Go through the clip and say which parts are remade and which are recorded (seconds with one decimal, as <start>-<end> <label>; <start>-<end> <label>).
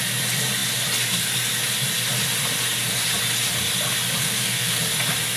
0.0-4.2 recorded; 4.2-4.8 remade; 4.8-5.4 recorded